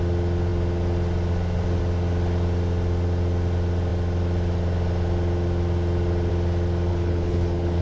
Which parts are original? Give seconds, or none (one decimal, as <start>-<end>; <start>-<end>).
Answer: 0.0-6.9